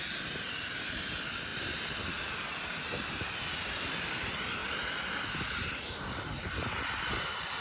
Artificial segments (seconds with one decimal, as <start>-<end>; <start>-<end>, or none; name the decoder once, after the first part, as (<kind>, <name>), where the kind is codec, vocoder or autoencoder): none